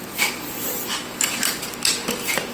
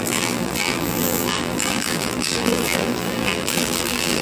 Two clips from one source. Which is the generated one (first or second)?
second